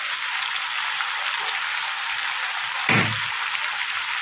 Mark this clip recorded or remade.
recorded